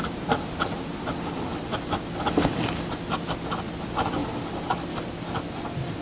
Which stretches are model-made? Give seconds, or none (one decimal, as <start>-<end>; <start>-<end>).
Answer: 4.2-6.0